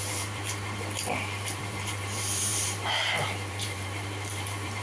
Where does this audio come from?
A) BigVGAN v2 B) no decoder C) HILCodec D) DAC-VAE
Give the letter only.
A